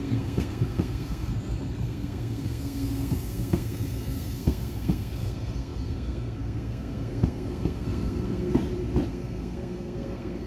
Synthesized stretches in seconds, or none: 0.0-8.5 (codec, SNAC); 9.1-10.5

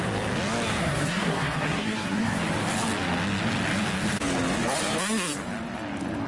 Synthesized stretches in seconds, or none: 0.8-2.4 (codec, SNAC)

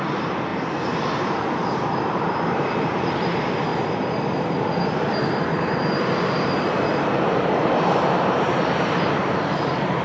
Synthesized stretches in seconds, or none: 0.0-0.5 (vocoder, BigVGAN v2); 1.2-3.7; 5.3-10.0

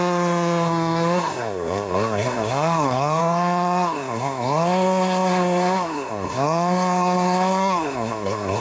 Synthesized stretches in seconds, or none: 0.0-8.6 (codec, SNAC)

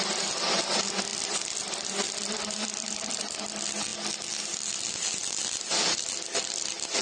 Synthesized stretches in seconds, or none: 1.1-3.4 (vocoder, BigVGAN v2); 5.2-7.0

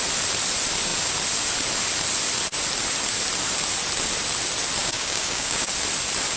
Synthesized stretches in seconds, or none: 4.8-5.7 (codec, DAC)

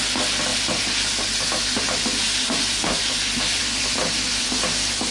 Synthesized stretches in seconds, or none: none

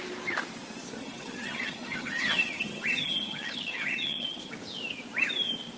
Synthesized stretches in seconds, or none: 1.0-4.5 (vocoder, HiFi-GAN)